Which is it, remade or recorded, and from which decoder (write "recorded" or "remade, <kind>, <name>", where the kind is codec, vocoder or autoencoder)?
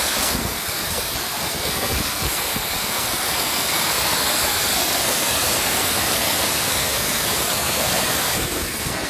remade, codec, SNAC